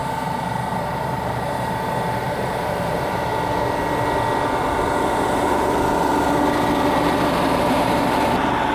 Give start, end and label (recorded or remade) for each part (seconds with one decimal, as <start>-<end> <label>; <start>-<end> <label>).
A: 0.0-0.8 recorded; 0.8-3.3 remade; 3.3-7.4 recorded; 7.4-8.7 remade